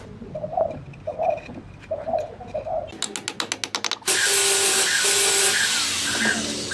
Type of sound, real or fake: real